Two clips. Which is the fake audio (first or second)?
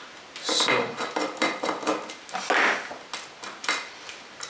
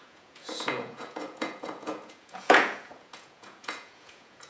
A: second